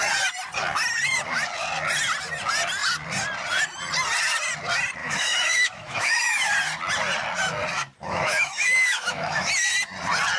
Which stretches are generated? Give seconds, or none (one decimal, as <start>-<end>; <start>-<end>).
5.0-6.5; 8.0-9.5